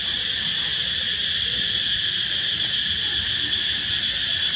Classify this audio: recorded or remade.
recorded